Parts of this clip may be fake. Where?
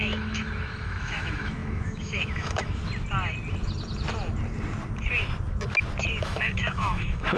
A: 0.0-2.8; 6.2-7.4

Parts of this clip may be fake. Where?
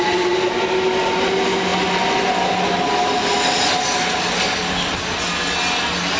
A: none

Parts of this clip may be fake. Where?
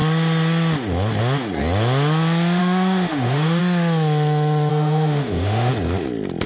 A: 2.6-3.6; 4.7-5.7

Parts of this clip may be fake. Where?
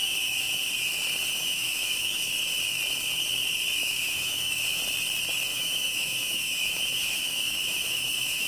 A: 0.0-0.7; 1.4-2.3; 3.8-4.8; 5.5-8.5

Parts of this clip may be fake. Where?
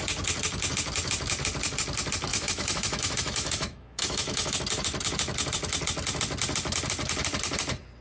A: 2.3-4.6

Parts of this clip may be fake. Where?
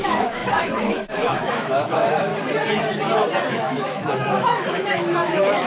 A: 0.0-2.3; 3.5-5.7